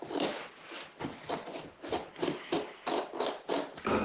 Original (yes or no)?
yes